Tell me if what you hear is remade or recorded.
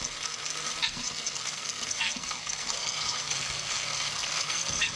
remade